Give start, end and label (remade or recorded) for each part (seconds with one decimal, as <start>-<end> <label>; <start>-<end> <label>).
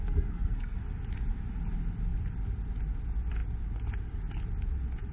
0.0-0.8 remade; 0.8-5.1 recorded